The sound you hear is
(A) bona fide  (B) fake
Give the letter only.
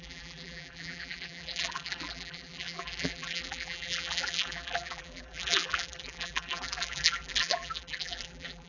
B